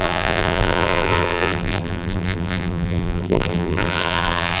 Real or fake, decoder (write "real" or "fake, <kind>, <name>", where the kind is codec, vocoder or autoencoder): fake, vocoder, BigVGAN v2